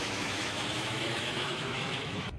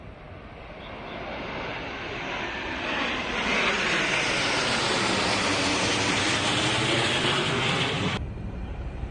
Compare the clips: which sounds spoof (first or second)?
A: first